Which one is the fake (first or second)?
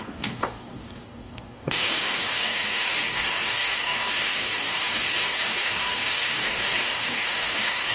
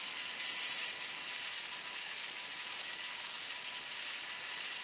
first